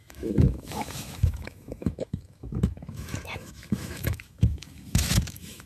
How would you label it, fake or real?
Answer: fake